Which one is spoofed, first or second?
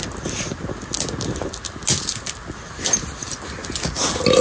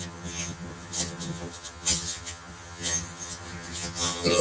second